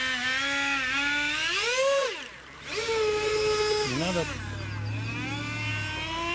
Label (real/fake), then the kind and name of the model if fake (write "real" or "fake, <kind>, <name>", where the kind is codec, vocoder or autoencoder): real